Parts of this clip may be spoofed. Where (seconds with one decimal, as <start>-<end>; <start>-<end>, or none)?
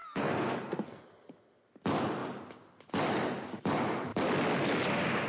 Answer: 0.0-1.0